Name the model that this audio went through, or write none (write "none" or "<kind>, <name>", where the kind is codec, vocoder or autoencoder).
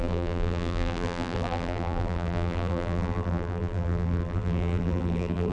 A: vocoder, BigVGAN v2